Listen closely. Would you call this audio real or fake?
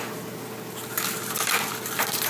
real